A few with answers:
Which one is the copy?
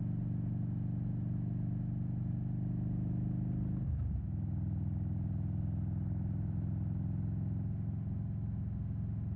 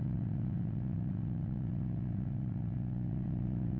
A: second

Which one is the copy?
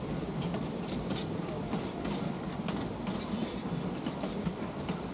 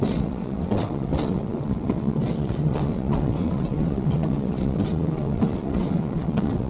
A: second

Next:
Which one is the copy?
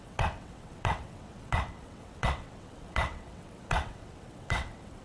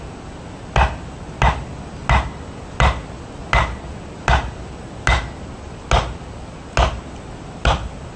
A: first